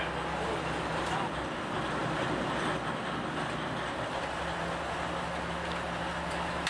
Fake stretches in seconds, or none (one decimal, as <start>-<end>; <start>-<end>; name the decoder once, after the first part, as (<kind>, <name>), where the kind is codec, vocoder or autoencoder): none